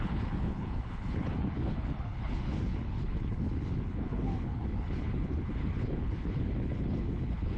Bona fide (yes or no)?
no